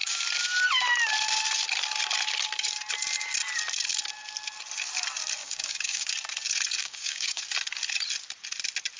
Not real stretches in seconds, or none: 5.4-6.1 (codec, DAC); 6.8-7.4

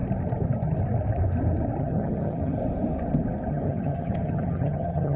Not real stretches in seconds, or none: 1.8-2.6 (vocoder, HiFi-GAN); 3.5-5.2

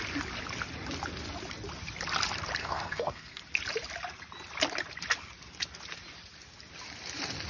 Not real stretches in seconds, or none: 2.6-3.4 (codec, SNAC)

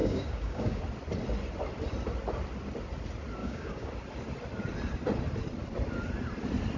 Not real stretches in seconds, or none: 0.0-0.8 (codec, DAC); 3.4-3.9

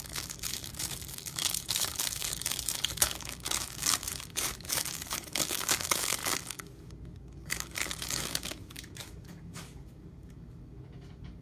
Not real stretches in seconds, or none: 0.0-11.4 (codec, DAC)

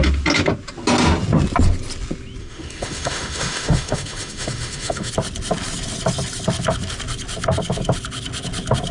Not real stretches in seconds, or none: 2.4-5.1 (autoencoder, DAC-VAE)

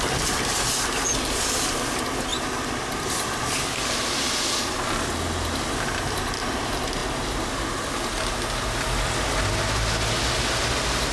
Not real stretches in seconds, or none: 2.3-3.4 (vocoder, BigVGAN v2)

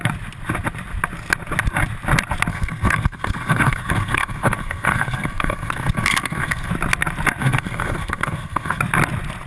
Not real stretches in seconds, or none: 2.5-6.7 (codec, SNAC); 7.4-8.8